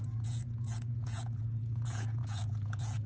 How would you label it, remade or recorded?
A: remade